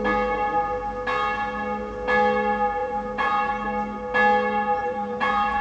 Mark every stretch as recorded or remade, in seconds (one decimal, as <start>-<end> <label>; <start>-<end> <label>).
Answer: 0.0-2.8 recorded; 2.8-3.5 remade; 3.5-4.8 recorded; 4.8-5.6 remade